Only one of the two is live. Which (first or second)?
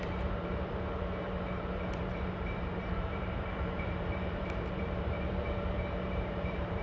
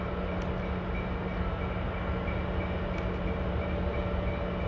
second